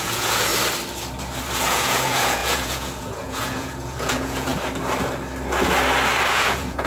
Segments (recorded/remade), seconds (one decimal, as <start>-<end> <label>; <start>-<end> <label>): 0.0-0.5 remade; 0.5-1.6 recorded; 1.6-4.5 remade; 4.5-6.3 recorded; 6.3-6.9 remade